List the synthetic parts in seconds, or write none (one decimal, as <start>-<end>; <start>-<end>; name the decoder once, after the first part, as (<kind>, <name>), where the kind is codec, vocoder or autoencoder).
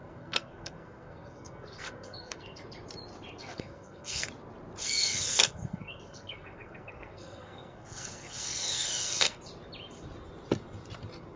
0.0-2.6 (codec, SNAC); 3.4-4.3; 4.8-9.4